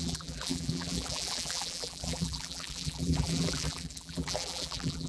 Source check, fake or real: fake